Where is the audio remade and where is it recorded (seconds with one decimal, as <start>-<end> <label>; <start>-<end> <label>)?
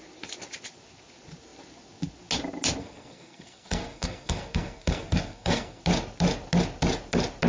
0.0-2.8 recorded; 2.8-5.8 remade; 5.8-7.5 recorded